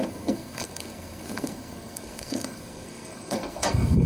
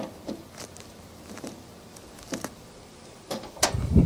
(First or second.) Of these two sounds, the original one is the second